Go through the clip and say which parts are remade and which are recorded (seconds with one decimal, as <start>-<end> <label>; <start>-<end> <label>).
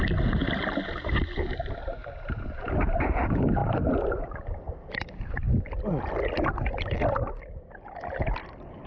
0.0-0.4 recorded; 0.4-1.1 remade; 1.1-2.0 recorded; 2.0-3.2 remade; 3.2-3.6 recorded; 3.6-6.1 remade; 6.1-8.9 recorded